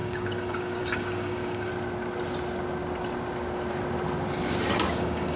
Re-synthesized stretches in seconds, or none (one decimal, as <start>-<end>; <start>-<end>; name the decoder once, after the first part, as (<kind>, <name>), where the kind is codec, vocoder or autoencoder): 0.0-1.7 (codec, DAC); 4.9-5.4